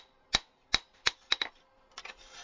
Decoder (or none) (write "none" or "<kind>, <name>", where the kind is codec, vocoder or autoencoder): none